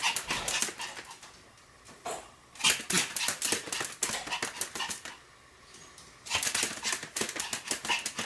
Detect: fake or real real